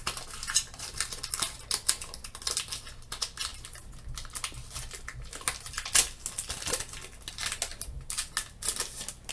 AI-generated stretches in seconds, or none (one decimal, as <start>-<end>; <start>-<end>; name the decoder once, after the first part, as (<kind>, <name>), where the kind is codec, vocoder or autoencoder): none